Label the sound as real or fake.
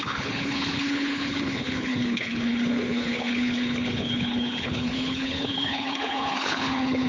fake